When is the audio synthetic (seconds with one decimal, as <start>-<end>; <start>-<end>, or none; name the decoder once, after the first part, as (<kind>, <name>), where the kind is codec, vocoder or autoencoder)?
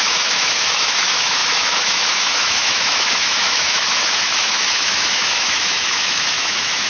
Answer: 0.0-6.9 (autoencoder, DAC-VAE)